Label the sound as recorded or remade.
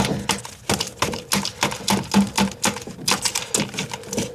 recorded